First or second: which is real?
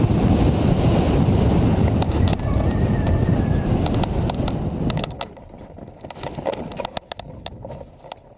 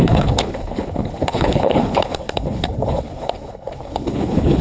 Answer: first